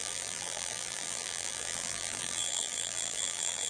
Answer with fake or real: fake